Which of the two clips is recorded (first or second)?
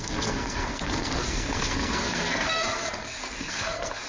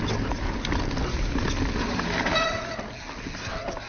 second